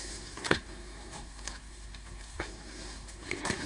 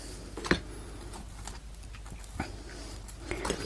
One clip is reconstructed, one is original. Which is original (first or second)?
second